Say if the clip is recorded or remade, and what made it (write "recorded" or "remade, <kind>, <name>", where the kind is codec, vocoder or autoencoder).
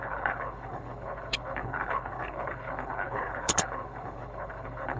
remade, codec, HILCodec